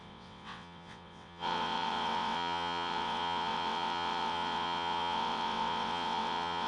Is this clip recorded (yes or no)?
no